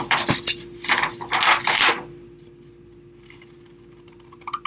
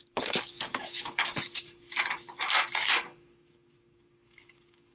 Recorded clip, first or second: first